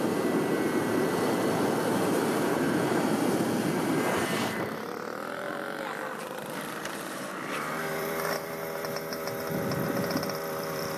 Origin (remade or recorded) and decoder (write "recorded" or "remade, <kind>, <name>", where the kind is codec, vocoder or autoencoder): remade, vocoder, BigVGAN v2